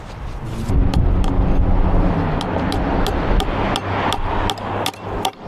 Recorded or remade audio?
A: recorded